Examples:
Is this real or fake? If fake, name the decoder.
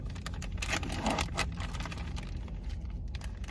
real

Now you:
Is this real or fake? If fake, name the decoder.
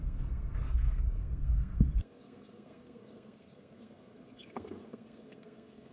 fake, codec, SNAC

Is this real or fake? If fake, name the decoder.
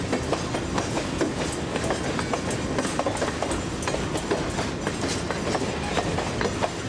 real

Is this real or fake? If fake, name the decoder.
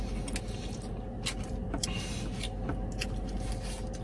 real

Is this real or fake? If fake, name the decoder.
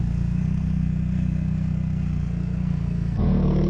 fake, codec, SNAC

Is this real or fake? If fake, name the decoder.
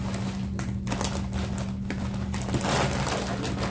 real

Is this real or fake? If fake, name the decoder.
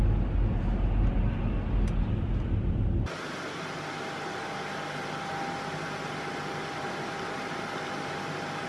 real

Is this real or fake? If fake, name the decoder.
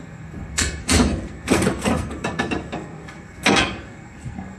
fake, codec, SNAC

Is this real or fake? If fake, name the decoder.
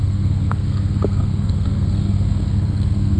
fake, codec, SNAC